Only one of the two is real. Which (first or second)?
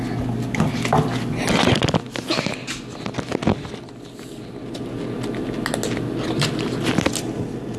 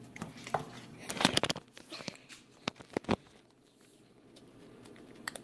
first